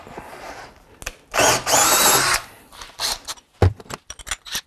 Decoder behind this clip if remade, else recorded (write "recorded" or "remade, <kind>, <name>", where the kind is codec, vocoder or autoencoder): recorded